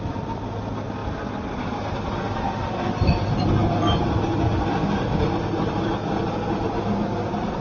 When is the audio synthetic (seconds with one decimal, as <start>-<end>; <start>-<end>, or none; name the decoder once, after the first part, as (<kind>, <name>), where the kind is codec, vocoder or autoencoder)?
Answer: none